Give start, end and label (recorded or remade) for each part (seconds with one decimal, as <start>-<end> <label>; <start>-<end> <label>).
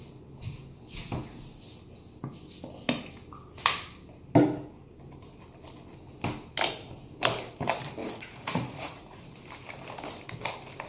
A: 0.0-8.0 recorded; 8.0-9.3 remade; 9.3-10.9 recorded